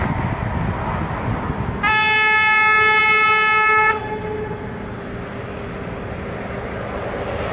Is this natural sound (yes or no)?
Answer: yes